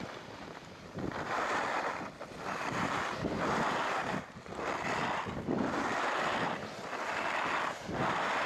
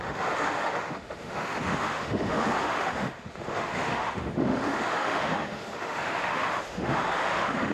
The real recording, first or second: first